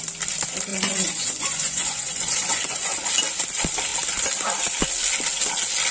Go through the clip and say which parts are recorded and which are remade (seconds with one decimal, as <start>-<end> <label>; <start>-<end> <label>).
0.0-0.7 recorded; 0.7-3.1 remade; 3.1-5.9 recorded